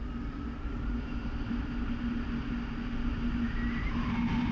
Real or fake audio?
real